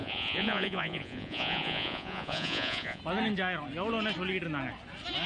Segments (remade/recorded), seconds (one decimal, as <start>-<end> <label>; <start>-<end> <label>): 0.0-3.0 remade; 3.0-5.3 recorded